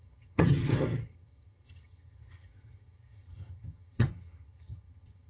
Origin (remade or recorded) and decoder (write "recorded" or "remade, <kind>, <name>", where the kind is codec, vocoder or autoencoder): remade, vocoder, HiFi-GAN